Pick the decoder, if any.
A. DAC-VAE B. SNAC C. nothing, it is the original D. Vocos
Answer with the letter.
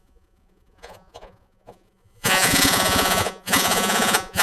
D